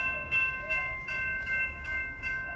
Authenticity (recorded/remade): remade